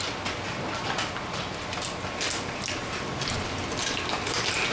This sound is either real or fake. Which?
real